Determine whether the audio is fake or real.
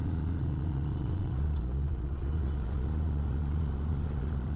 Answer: fake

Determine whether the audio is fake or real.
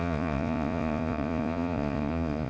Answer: fake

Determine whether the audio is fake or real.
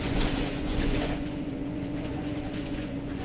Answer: fake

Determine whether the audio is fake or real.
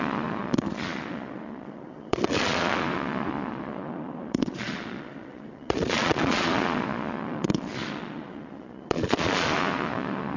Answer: fake